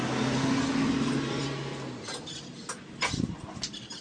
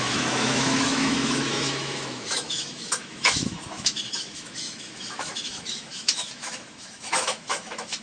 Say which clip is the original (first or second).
first